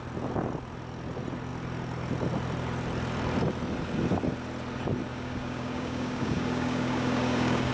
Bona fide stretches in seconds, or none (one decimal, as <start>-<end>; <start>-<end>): 0.0-5.1